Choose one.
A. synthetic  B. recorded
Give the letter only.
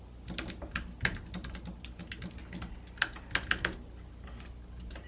B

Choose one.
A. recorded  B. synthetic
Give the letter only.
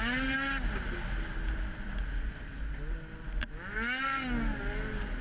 A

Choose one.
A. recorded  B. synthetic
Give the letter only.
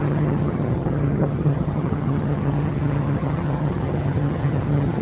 B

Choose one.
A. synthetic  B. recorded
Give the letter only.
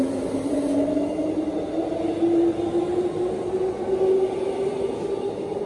B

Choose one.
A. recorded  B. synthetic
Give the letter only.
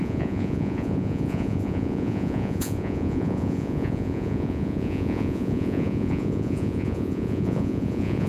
B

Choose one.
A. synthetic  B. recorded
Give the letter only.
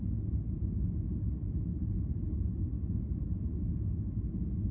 B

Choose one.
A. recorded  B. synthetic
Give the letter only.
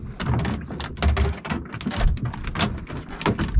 A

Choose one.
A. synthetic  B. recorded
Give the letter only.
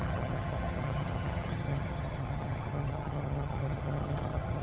A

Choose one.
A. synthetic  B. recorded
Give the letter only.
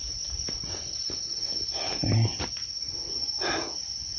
B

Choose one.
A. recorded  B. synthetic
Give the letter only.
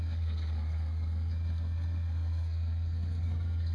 B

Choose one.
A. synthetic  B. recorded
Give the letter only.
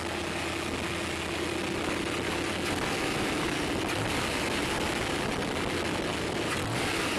B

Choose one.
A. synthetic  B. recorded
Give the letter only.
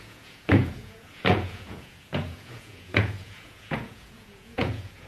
A